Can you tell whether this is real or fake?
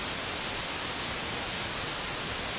real